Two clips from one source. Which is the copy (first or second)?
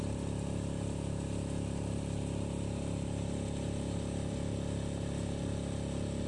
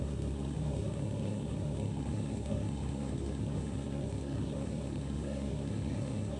second